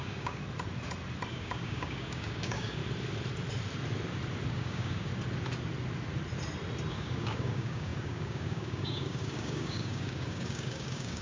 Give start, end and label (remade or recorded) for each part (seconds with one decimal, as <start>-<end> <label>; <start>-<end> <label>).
0.0-0.4 remade; 0.4-1.3 recorded; 1.3-2.8 remade; 2.8-4.5 recorded; 4.5-5.1 remade; 5.1-6.9 recorded; 6.9-11.2 remade